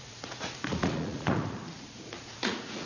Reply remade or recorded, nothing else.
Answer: remade